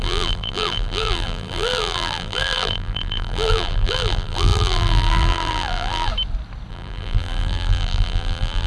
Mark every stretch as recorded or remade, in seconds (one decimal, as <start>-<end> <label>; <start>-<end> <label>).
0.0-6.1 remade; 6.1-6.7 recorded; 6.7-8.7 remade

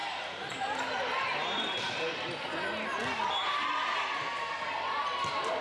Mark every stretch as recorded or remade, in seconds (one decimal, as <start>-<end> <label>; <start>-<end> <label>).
0.0-0.5 remade; 0.5-1.3 recorded; 1.3-2.4 remade; 2.4-5.6 recorded

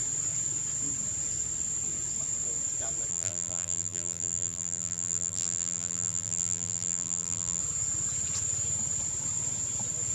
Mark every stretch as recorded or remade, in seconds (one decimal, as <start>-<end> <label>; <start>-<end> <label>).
0.0-3.1 recorded; 3.1-7.6 remade; 7.6-10.1 recorded

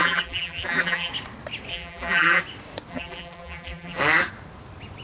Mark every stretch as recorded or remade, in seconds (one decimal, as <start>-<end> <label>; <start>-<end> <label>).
0.0-1.1 remade; 1.1-1.7 recorded; 1.7-2.4 remade; 2.4-2.9 recorded; 2.9-4.0 remade; 4.0-5.0 recorded

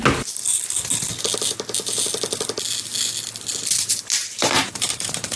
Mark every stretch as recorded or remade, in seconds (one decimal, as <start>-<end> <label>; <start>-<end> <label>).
0.0-4.2 recorded; 4.2-5.4 remade

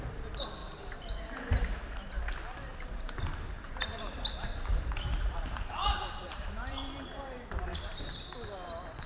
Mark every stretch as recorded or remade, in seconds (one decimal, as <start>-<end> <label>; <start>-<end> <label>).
0.0-2.7 recorded; 2.7-7.5 remade; 7.5-9.1 recorded

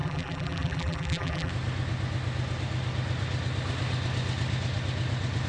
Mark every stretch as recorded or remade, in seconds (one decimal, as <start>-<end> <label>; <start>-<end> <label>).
0.0-1.5 remade; 1.5-5.5 recorded